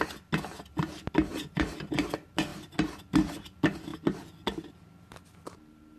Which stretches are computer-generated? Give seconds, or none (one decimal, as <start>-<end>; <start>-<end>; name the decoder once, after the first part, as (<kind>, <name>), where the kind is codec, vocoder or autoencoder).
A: none